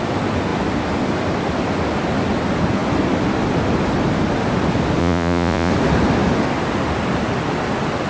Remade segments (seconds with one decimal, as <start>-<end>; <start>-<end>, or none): 5.0-5.7